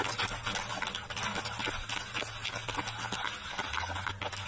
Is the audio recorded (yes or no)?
yes